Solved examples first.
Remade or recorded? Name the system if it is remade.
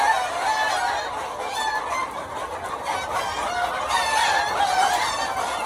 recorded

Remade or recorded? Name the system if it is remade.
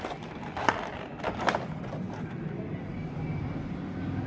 recorded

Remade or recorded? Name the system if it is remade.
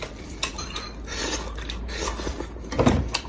recorded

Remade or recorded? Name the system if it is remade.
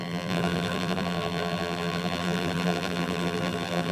remade, vocoder, BigVGAN v2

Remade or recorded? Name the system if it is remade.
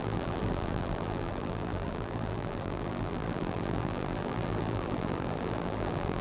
remade, vocoder, BigVGAN v2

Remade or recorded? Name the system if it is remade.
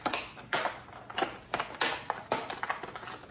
recorded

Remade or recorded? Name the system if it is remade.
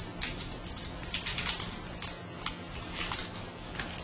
recorded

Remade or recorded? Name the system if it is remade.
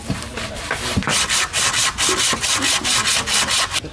recorded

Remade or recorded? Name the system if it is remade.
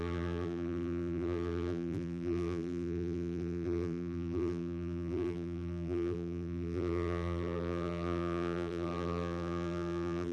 remade, vocoder, BigVGAN v2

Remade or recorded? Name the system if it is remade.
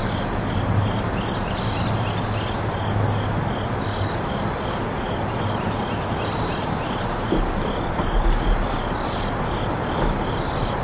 recorded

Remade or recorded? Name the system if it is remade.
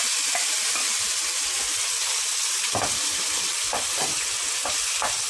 remade, vocoder, BigVGAN v2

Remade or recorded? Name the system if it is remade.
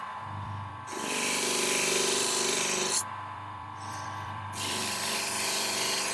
remade, vocoder, BigVGAN v2